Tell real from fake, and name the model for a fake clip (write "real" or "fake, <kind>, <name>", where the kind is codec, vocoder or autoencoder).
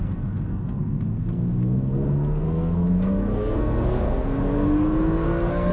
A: fake, codec, SNAC